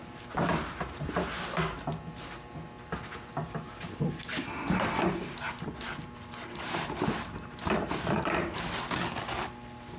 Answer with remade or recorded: recorded